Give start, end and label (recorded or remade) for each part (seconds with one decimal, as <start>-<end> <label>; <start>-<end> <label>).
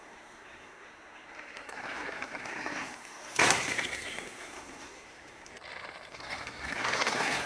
0.0-5.5 remade; 5.5-6.1 recorded; 6.1-7.5 remade